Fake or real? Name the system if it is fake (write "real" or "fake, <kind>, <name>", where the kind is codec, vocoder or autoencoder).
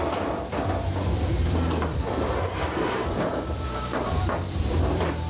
fake, vocoder, BigVGAN v2